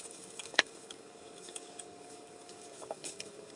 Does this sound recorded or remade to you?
remade